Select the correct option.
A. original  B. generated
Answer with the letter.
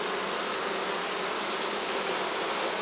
A